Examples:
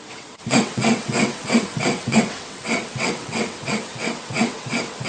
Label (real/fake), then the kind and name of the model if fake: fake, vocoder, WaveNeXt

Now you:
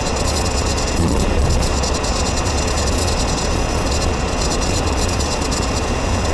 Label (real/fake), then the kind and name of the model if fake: fake, vocoder, Vocos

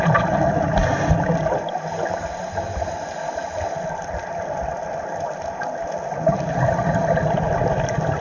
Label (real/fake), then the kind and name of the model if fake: real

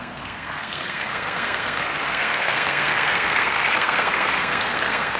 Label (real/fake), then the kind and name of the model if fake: fake, codec, SNAC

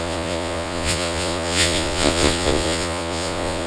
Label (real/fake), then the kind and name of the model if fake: fake, vocoder, Vocos